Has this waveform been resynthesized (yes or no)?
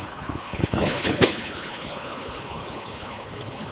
yes